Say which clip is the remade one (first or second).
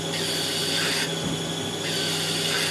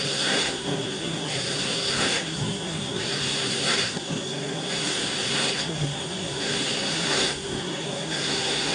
second